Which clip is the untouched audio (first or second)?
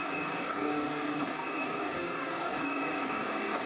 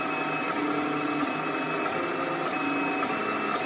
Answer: second